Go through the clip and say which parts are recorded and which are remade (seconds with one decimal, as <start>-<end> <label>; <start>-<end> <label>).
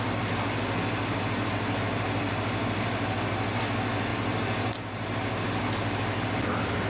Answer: 0.0-6.9 recorded